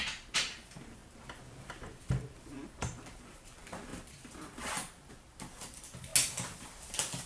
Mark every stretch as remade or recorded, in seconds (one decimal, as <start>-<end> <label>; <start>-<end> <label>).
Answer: 0.0-1.0 remade; 1.0-1.6 recorded; 1.6-6.1 remade; 6.1-7.3 recorded